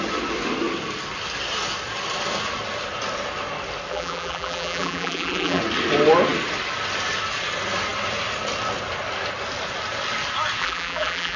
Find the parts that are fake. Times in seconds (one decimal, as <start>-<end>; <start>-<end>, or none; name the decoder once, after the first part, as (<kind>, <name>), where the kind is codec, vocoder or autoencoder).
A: 3.9-5.6 (vocoder, BigVGAN v2); 10.6-11.4